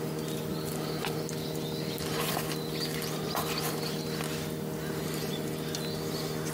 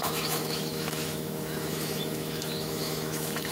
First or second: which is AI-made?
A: second